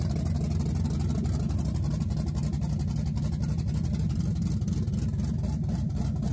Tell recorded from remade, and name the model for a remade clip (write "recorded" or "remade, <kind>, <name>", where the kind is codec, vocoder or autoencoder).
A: recorded